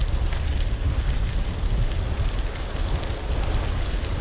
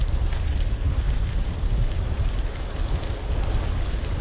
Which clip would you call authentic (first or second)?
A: first